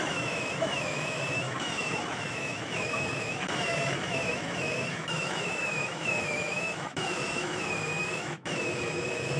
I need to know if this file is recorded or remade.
remade